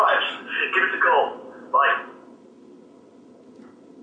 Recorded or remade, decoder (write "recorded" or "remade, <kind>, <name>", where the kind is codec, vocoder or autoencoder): recorded